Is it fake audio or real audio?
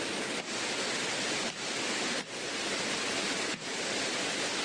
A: real